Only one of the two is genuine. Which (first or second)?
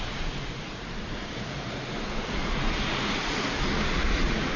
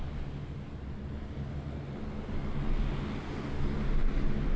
second